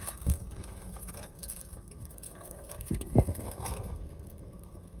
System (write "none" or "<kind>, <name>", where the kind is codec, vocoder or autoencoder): codec, SNAC